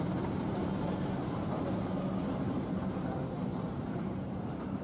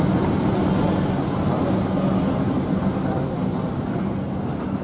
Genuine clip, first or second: second